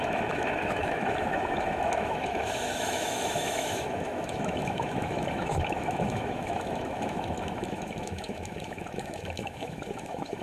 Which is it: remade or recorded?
remade